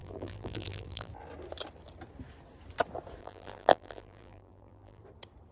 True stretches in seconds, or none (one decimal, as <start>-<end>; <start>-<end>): 1.1-3.2; 5.0-5.5